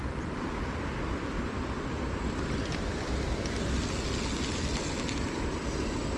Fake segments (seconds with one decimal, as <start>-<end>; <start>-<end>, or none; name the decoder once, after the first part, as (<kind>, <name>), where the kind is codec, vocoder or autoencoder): none